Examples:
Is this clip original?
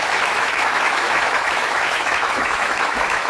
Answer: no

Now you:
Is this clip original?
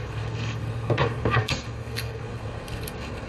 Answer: no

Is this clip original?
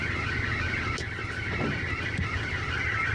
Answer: yes